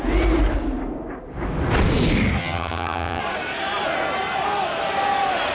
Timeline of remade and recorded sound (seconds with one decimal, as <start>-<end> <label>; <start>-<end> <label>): 0.0-2.4 recorded; 2.4-3.2 remade; 3.2-5.5 recorded